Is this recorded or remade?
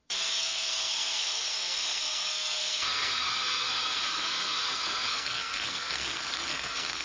remade